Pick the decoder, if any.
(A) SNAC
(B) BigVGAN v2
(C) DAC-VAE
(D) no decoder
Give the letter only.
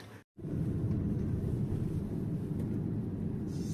D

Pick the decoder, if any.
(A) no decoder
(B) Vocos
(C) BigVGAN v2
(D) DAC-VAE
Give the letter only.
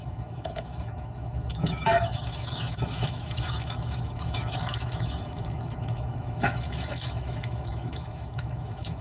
D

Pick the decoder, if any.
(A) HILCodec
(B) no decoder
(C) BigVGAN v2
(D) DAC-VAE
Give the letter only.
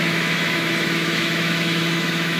D